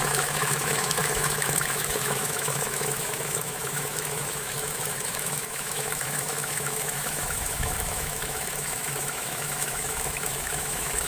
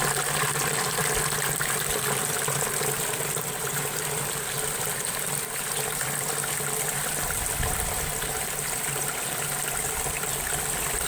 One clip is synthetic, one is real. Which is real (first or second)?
second